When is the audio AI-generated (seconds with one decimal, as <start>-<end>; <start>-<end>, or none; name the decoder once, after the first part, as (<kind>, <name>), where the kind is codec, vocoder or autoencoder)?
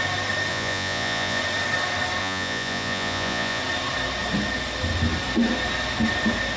0.5-1.4 (vocoder, Vocos); 2.2-3.6